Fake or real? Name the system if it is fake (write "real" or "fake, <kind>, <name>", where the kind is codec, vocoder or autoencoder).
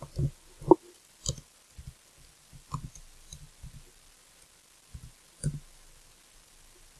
real